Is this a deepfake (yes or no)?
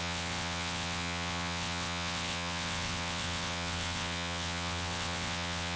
yes